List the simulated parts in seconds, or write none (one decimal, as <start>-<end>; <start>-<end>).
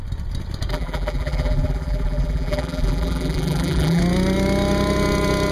0.7-4.0